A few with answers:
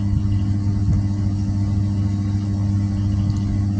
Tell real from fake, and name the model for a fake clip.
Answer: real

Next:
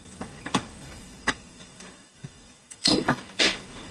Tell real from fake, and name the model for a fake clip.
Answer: fake, codec, DAC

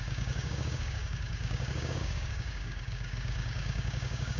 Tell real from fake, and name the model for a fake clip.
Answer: fake, codec, DAC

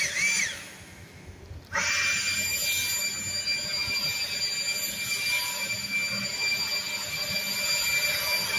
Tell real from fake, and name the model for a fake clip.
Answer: real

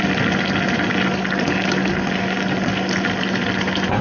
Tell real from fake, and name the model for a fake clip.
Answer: real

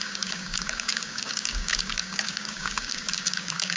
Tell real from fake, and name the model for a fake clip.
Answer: fake, codec, DAC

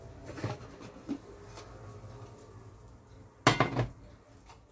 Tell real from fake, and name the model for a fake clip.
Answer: real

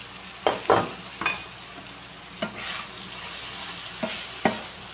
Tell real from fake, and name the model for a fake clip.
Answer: real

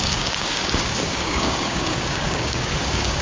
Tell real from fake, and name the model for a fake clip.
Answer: fake, codec, DAC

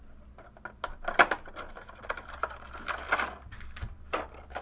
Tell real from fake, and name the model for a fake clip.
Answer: real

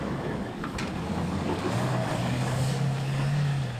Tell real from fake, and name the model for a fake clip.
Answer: fake, codec, DAC